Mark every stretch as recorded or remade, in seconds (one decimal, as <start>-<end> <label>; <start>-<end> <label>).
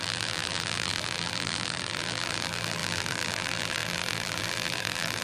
0.0-5.2 remade